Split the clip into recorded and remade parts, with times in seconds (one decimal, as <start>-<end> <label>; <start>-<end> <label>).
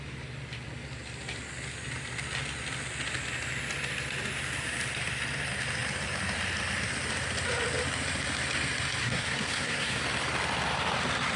0.0-9.0 recorded; 9.0-10.0 remade; 10.0-11.4 recorded